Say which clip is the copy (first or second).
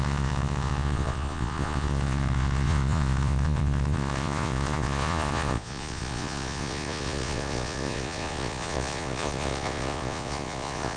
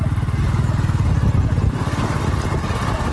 first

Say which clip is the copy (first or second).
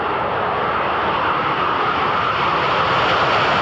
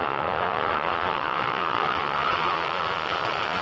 second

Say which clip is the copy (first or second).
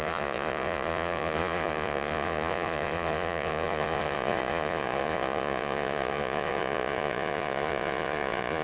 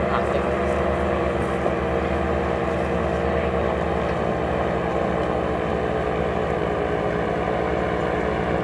first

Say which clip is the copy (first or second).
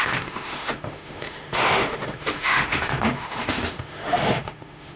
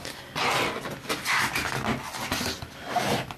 first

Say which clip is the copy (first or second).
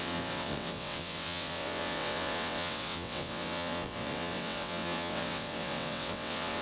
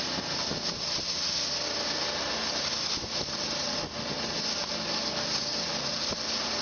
first